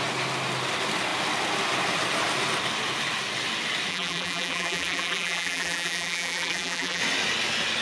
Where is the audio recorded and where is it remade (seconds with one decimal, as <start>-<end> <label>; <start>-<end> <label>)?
0.0-3.9 recorded; 3.9-7.0 remade; 7.0-7.8 recorded